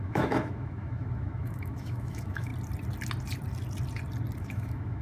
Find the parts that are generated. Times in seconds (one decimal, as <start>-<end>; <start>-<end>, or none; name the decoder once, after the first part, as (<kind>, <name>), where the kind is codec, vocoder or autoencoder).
0.0-2.5 (autoencoder, DAC-VAE); 4.4-5.0

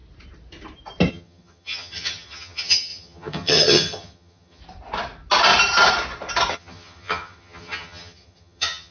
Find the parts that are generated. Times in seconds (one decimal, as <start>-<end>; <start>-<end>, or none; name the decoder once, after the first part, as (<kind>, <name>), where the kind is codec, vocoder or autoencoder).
1.1-4.6 (vocoder, HiFi-GAN); 6.5-8.9

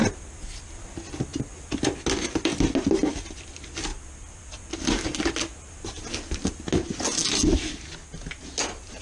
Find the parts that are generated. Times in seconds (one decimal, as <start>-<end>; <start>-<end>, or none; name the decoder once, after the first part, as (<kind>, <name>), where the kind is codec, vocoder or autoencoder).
none

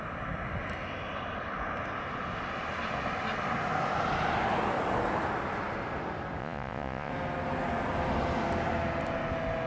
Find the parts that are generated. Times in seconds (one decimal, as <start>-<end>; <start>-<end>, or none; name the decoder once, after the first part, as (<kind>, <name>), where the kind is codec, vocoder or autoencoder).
6.4-7.1 (vocoder, Vocos)

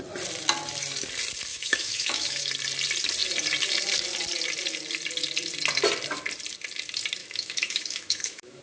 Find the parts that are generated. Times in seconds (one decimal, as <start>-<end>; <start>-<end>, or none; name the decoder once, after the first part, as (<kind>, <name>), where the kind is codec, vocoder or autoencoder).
1.5-2.5 (autoencoder, DAC-VAE); 7.2-8.6

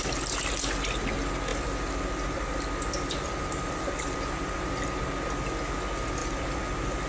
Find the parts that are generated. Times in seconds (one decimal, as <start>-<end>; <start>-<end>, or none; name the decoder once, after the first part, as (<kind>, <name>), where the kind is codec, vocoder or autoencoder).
1.5-4.1 (vocoder, BigVGAN v2); 6.2-7.1

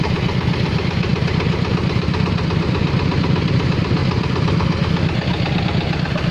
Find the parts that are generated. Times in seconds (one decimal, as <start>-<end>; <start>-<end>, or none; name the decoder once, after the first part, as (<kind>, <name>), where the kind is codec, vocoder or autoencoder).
none

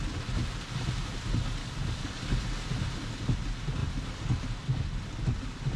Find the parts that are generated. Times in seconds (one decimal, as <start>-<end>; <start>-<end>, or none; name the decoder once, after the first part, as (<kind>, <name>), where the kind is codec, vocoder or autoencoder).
1.6-2.2 (codec, DAC)